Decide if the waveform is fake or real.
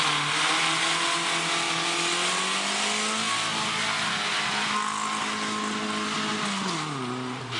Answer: real